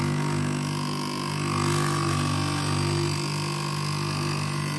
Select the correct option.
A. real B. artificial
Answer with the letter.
A